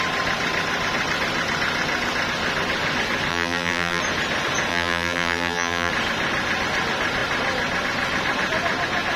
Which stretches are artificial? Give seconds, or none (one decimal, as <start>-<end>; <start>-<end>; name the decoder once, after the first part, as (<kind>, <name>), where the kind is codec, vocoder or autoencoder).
3.3-4.0 (vocoder, BigVGAN v2); 4.7-5.9